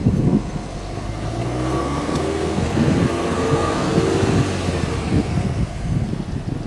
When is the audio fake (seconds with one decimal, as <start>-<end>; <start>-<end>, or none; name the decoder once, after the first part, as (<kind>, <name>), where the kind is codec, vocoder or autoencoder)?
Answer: 0.0-4.0 (codec, SNAC); 5.0-6.1